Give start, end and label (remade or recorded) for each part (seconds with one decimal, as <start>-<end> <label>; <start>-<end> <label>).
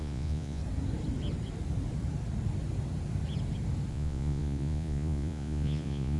0.0-0.6 remade; 0.6-3.9 recorded; 3.9-6.2 remade